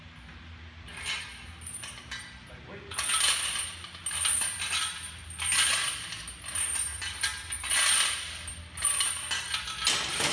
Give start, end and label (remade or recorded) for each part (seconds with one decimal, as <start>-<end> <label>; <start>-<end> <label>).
0.0-10.3 recorded